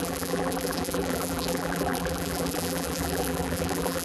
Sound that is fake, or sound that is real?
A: fake